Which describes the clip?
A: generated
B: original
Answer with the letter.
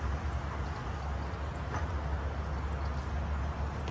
B